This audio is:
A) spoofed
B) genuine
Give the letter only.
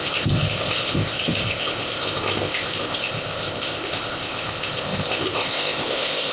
A